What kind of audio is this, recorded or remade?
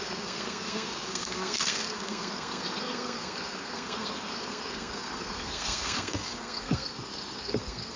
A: remade